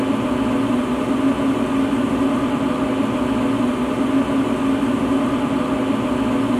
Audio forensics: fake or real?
real